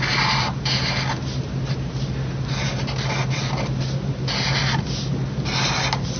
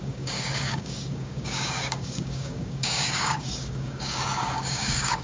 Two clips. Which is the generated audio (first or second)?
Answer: second